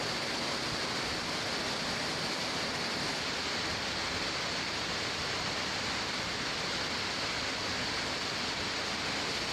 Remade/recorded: recorded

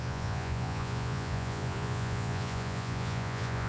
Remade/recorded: remade